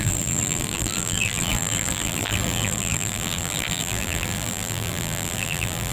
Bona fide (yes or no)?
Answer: no